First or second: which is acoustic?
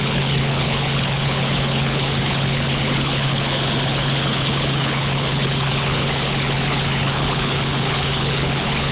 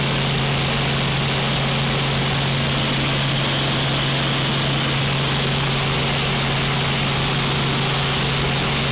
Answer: second